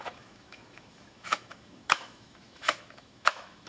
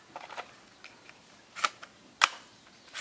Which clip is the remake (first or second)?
first